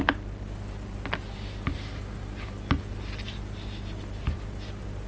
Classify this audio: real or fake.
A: real